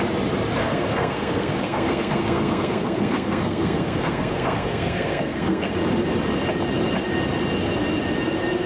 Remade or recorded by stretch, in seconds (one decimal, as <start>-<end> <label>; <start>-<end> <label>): 0.0-0.6 recorded; 0.6-5.7 remade; 5.7-8.7 recorded